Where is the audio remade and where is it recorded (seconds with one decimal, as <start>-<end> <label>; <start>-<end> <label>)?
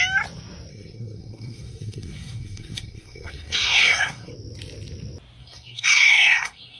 0.0-0.7 recorded; 0.7-4.3 remade; 4.3-5.4 recorded; 5.4-6.8 remade